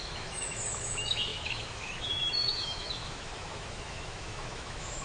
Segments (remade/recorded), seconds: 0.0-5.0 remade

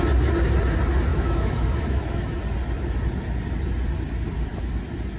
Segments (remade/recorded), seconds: 0.0-1.1 recorded; 1.1-2.4 remade; 2.4-5.2 recorded